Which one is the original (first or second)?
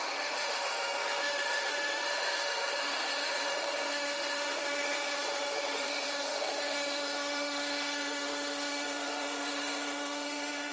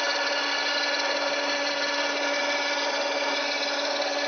second